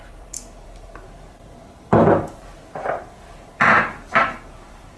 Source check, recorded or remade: remade